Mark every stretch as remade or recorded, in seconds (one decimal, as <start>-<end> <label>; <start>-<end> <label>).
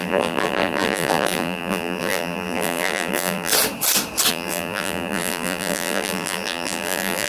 0.0-3.5 remade; 3.5-4.3 recorded; 4.3-7.3 remade